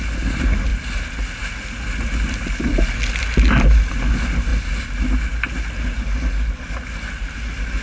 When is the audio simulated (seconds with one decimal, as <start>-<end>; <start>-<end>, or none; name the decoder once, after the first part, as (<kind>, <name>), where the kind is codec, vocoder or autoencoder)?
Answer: none